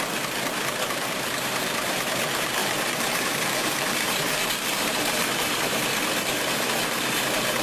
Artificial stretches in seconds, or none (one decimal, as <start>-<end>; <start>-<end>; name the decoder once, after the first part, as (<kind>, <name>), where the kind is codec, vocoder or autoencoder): 0.0-7.6 (vocoder, BigVGAN v2)